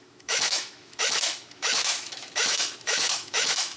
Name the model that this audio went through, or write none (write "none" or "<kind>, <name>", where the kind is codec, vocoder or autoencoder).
autoencoder, DAC-VAE